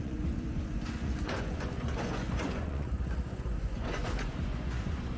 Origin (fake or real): fake